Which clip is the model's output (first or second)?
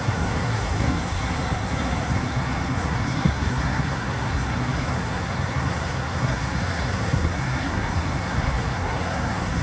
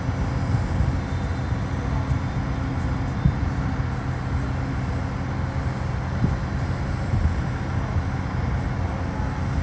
first